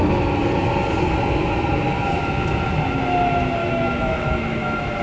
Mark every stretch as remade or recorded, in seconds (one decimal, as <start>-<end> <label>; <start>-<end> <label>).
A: 0.0-3.6 recorded; 3.6-5.0 remade